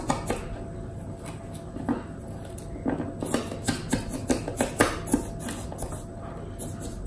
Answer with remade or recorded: recorded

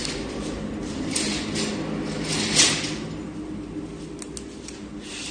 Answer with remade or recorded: recorded